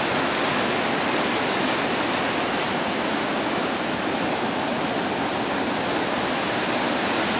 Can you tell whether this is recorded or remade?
recorded